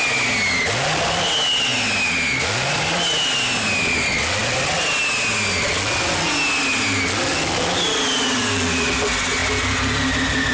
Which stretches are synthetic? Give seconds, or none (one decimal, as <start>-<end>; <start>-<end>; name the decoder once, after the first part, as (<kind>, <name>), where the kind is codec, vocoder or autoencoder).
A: none